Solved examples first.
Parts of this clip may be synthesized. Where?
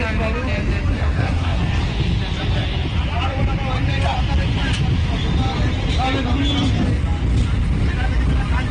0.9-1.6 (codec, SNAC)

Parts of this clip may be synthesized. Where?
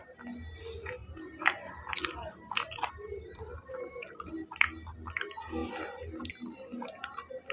1.0-4.2 (vocoder, BigVGAN v2)